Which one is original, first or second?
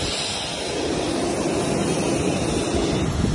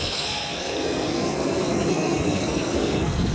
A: first